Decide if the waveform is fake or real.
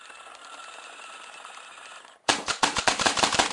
fake